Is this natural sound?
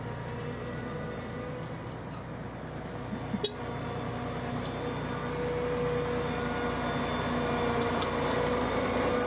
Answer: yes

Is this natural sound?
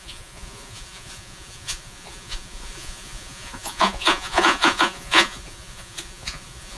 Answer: no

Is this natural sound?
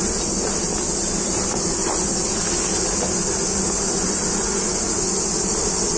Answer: yes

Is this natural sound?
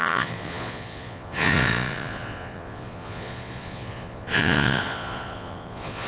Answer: no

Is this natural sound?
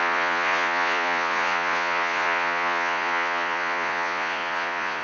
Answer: no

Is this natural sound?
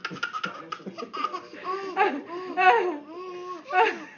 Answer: yes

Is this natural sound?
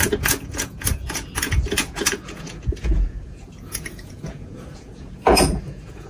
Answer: no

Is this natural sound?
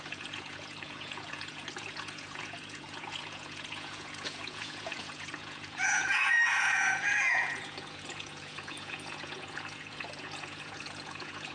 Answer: no